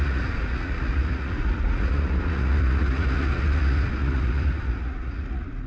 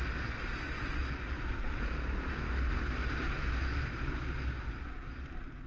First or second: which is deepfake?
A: first